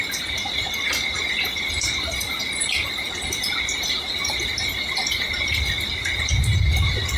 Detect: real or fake real